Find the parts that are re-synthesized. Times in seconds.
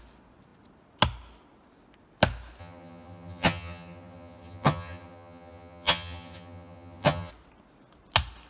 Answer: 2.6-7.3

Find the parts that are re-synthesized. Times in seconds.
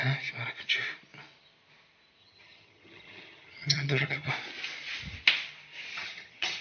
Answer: 2.2-4.3; 5.9-6.6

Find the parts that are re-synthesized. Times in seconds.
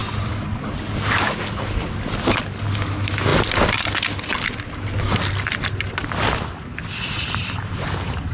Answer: none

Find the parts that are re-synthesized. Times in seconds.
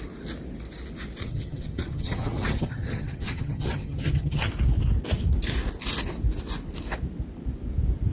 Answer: 1.2-4.5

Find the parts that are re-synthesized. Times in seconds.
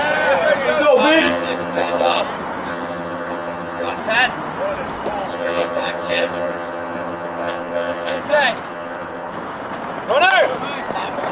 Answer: 1.2-2.2; 2.7-4.0; 5.3-8.2; 8.7-9.3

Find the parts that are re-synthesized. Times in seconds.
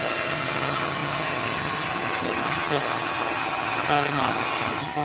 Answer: 0.0-5.0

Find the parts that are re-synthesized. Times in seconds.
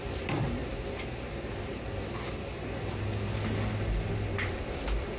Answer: none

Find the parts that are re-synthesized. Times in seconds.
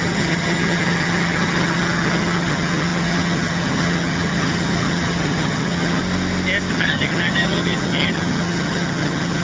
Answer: 0.0-6.0; 6.7-9.4